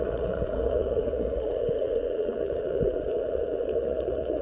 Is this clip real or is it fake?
fake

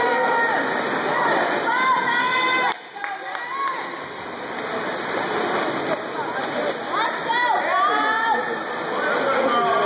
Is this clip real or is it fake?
real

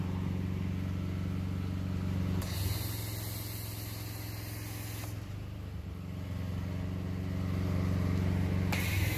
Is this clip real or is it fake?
real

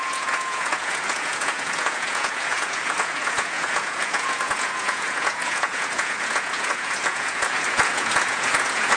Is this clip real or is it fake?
fake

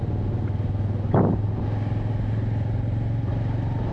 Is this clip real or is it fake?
real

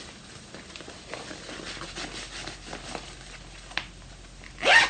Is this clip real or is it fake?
real